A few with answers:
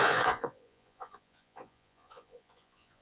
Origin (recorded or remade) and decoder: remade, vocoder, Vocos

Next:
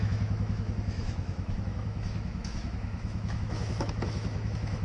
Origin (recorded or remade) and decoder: remade, autoencoder, DAC-VAE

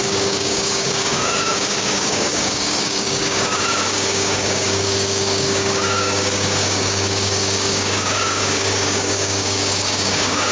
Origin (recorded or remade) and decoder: remade, codec, DAC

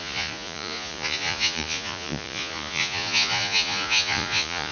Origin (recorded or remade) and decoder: remade, vocoder, Vocos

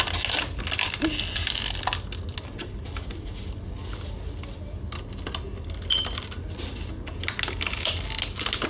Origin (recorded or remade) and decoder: recorded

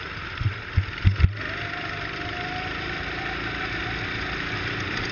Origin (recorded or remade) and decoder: recorded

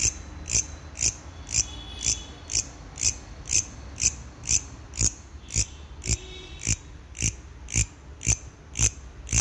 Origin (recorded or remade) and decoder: recorded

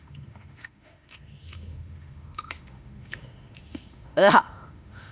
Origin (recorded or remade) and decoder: remade, autoencoder, DAC-VAE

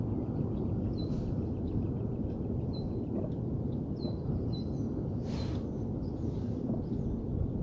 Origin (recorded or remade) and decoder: recorded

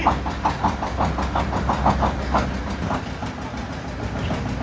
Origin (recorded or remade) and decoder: recorded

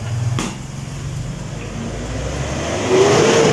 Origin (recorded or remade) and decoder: recorded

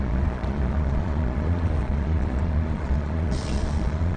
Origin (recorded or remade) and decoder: remade, vocoder, Vocos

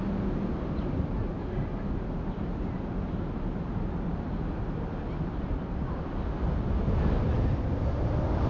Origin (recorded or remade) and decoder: recorded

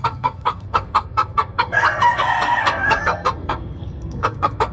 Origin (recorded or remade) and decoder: remade, codec, SNAC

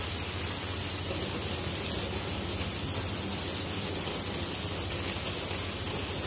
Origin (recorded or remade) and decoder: recorded